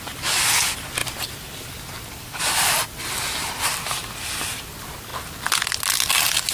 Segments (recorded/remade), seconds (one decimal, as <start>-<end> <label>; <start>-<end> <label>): 0.0-6.5 recorded

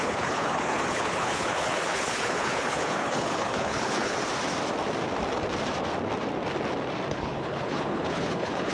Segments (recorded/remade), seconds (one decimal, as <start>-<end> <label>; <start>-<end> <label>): 0.0-4.2 remade; 4.2-7.1 recorded; 7.1-8.7 remade

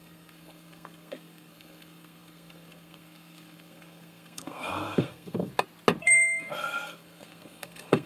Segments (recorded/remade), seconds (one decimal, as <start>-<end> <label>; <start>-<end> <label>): 0.0-5.5 remade; 5.5-6.0 recorded; 6.0-8.1 remade

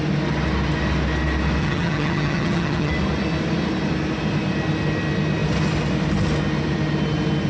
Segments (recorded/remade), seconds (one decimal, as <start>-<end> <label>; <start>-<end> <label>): 0.0-1.6 recorded; 1.6-2.9 remade; 2.9-7.5 recorded

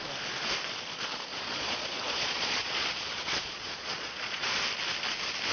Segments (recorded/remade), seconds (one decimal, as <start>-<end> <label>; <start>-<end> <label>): 0.0-1.3 recorded; 1.3-4.6 remade; 4.6-5.5 recorded